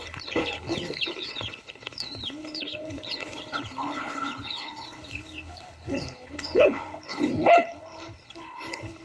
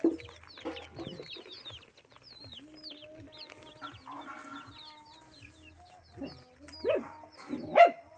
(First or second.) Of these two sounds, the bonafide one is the second